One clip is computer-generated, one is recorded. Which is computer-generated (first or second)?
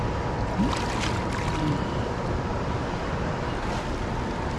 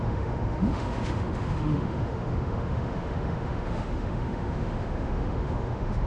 second